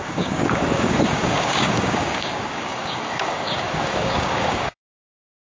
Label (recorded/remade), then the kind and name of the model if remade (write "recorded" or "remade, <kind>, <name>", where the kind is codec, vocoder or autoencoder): remade, codec, DAC